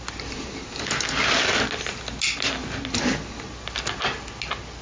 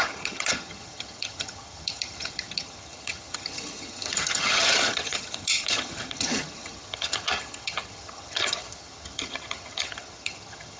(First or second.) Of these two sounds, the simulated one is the second